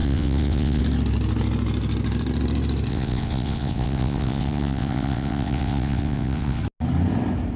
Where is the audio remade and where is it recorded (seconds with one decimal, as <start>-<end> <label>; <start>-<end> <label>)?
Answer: 0.0-0.8 remade; 0.8-2.9 recorded; 2.9-6.6 remade; 6.6-7.6 recorded